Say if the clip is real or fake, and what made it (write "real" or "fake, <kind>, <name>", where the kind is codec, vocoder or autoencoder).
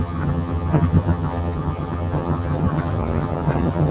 fake, vocoder, HiFi-GAN